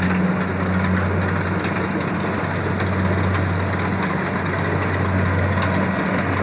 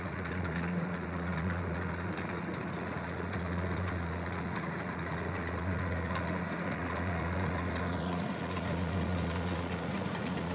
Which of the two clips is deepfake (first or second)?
second